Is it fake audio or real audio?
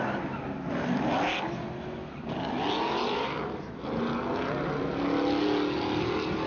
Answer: real